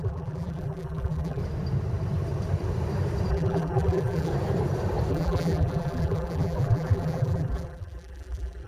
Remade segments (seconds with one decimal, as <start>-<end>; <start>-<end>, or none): 0.0-1.4; 3.3-4.3; 5.1-8.7